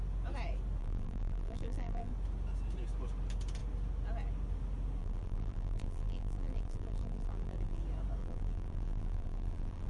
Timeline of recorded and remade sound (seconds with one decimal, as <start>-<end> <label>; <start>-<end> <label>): 0.0-0.8 recorded; 0.8-2.1 remade; 2.1-5.0 recorded; 5.0-7.8 remade; 7.8-8.2 recorded; 8.2-9.9 remade